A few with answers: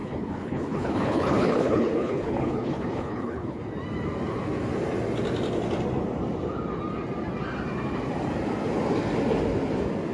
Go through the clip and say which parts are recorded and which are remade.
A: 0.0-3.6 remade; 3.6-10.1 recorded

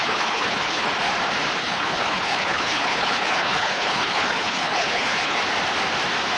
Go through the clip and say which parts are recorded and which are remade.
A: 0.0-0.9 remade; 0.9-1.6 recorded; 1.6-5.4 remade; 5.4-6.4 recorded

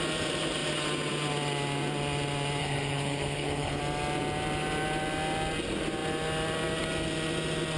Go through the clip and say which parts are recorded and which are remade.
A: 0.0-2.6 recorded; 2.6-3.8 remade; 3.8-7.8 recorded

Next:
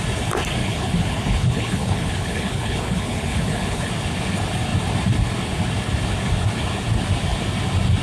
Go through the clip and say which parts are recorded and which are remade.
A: 0.0-0.6 recorded; 0.6-3.9 remade; 3.9-8.0 recorded